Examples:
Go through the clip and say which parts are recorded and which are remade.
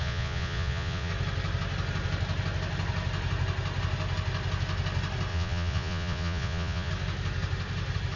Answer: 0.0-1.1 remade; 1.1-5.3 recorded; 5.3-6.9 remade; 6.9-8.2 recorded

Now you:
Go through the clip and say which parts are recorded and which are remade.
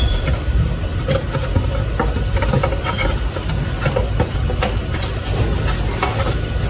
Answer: 0.0-6.7 recorded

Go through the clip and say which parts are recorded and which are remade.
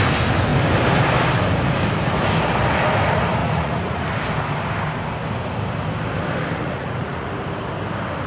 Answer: 0.0-3.4 recorded; 3.4-4.0 remade; 4.0-6.6 recorded; 6.6-7.3 remade; 7.3-8.3 recorded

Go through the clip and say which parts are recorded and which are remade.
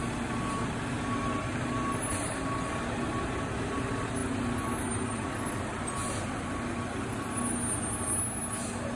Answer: 0.0-9.0 recorded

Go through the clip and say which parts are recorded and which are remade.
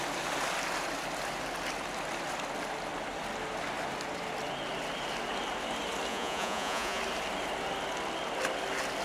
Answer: 0.0-6.1 recorded; 6.1-7.0 remade; 7.0-9.0 recorded